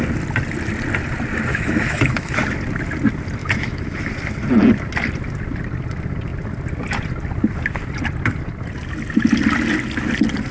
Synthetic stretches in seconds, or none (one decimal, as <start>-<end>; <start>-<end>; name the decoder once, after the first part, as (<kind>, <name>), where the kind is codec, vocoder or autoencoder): 1.5-2.4 (autoencoder, DAC-VAE); 3.4-4.1